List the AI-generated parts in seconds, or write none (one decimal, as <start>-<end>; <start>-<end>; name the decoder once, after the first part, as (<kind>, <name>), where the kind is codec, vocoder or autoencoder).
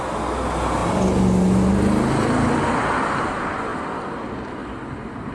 none